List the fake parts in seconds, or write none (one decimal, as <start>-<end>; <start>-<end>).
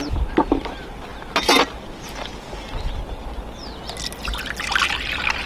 none